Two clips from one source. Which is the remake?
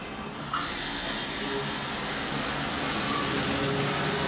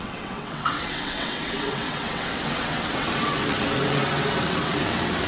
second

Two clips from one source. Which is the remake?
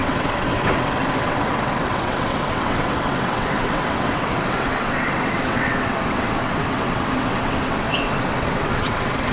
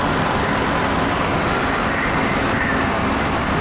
first